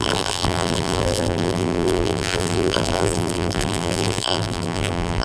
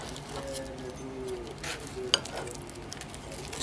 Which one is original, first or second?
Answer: second